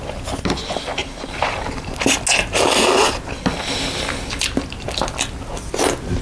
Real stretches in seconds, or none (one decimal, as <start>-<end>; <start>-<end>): 0.0-1.0; 2.2-6.2

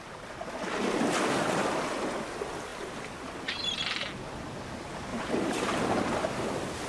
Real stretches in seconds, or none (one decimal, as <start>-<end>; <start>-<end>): 0.0-5.1; 5.7-6.9

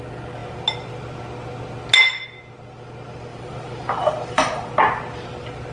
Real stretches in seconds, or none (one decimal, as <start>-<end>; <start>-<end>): 0.0-3.3; 4.7-5.7

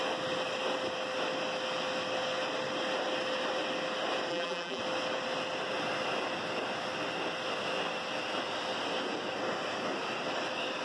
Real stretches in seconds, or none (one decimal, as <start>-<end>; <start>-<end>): 0.0-4.3; 4.8-10.8

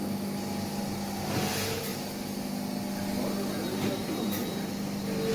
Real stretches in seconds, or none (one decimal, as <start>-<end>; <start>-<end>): 0.0-5.3

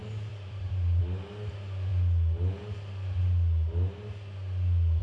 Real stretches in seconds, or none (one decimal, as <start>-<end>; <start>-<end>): 1.0-5.0